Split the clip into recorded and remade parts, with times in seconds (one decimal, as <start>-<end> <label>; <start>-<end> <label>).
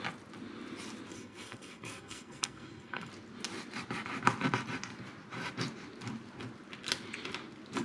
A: 0.0-1.1 recorded; 1.1-3.1 remade; 3.1-7.8 recorded